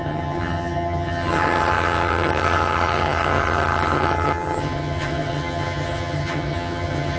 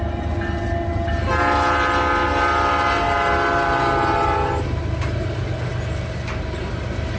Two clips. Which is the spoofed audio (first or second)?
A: first